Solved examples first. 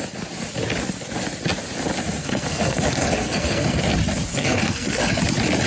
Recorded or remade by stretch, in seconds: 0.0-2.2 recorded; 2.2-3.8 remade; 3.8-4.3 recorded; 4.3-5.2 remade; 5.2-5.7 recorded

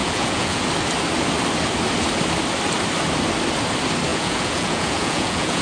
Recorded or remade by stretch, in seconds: 0.0-0.7 remade; 0.7-4.1 recorded; 4.1-5.6 remade